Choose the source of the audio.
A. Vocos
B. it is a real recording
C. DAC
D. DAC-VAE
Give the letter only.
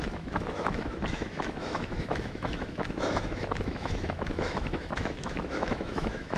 D